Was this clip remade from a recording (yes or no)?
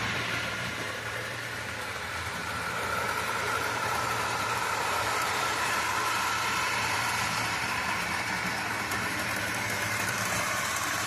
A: yes